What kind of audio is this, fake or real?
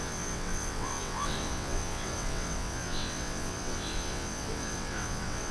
fake